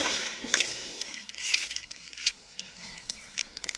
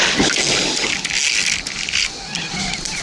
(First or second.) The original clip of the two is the second